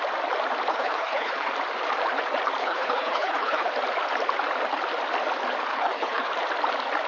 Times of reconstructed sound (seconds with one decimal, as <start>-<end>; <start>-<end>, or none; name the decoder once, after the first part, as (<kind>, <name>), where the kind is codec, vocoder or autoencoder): 0.7-1.5 (codec, HILCodec); 2.6-3.7; 5.7-6.3